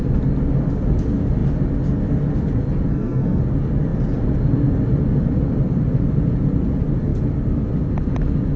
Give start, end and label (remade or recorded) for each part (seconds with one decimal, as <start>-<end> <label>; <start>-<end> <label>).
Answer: 0.0-2.9 recorded; 2.9-3.4 remade; 3.4-8.6 recorded